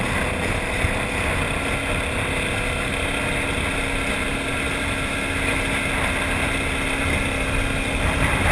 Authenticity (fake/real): real